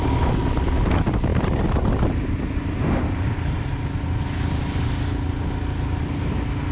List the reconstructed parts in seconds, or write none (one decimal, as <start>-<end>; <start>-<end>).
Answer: none